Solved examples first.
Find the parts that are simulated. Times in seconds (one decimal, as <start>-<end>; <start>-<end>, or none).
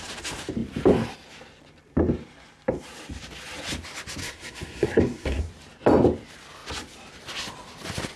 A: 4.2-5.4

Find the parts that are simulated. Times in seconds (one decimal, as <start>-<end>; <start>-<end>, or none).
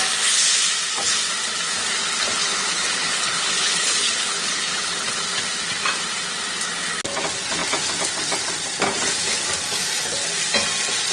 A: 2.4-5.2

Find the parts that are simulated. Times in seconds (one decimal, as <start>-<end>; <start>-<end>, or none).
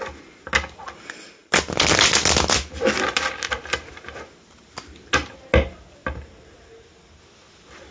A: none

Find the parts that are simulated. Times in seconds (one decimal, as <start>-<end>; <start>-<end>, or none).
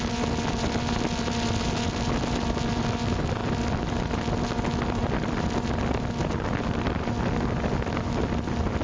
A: none